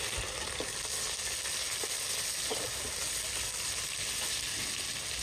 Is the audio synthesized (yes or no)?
no